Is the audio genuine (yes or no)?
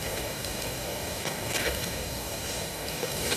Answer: no